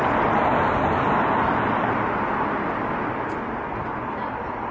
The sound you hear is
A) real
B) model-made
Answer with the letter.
A